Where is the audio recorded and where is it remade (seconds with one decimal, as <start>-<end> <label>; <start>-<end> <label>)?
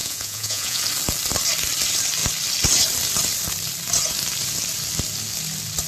0.0-0.8 remade; 0.8-5.9 recorded